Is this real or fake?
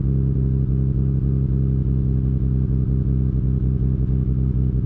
real